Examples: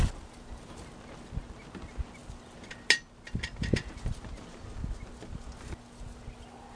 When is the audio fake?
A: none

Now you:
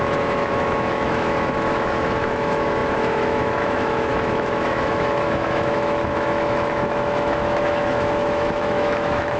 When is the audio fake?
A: 0.0-9.4 (autoencoder, DAC-VAE)

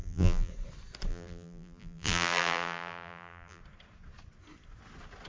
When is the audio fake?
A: 0.0-0.5 (vocoder, BigVGAN v2); 1.1-3.6

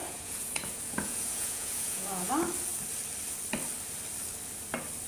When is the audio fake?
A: 0.0-2.3 (vocoder, Vocos)